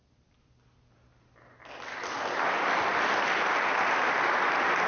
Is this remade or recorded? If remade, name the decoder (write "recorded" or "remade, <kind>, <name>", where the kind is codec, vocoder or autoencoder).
recorded